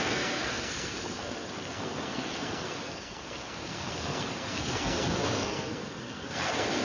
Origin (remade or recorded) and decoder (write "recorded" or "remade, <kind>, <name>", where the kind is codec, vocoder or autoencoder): remade, codec, SNAC